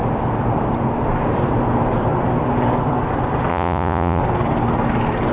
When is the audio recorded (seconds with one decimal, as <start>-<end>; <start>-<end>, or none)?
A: 0.0-3.5; 4.2-5.3